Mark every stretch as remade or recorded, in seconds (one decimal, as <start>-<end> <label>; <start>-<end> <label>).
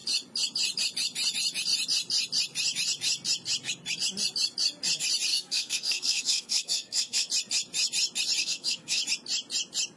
0.0-5.3 recorded; 5.3-7.3 remade; 7.3-8.4 recorded; 8.4-9.0 remade; 9.0-10.0 recorded